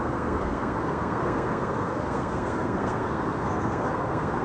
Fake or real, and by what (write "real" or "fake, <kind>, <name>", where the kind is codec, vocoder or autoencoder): fake, codec, SNAC